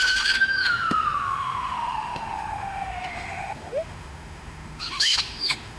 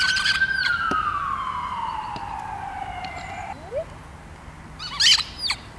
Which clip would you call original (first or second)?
second